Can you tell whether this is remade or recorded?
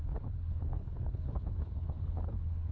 remade